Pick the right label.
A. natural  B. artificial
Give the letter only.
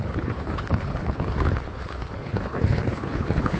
B